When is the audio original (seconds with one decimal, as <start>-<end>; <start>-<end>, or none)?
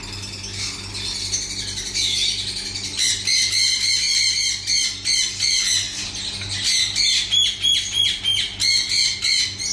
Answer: 0.0-9.7